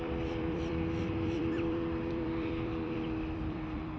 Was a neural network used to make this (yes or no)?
yes